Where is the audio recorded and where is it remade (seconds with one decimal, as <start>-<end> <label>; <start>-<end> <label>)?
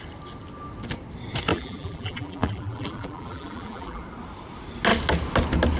0.0-1.5 recorded; 1.5-4.0 remade; 4.0-5.8 recorded